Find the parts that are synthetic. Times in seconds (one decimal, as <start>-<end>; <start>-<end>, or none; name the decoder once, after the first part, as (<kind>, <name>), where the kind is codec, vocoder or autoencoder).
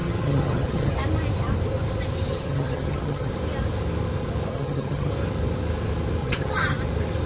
0.0-0.9 (vocoder, HiFi-GAN); 2.3-3.3; 4.5-5.1; 6.2-6.8